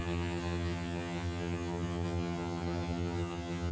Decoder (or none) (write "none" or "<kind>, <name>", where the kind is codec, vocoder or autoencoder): vocoder, HiFi-GAN